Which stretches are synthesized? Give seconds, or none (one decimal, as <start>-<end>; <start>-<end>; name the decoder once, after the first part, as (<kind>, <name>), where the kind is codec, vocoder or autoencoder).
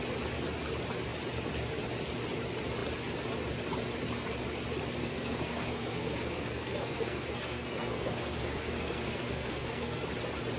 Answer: 5.0-10.0 (codec, SNAC)